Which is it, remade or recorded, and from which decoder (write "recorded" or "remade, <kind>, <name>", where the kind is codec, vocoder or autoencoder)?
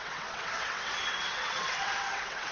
remade, vocoder, WaveNeXt